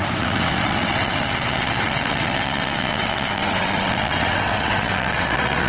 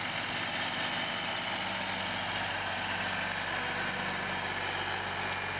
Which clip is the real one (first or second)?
second